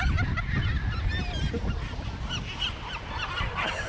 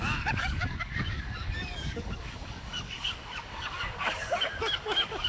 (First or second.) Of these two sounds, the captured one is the first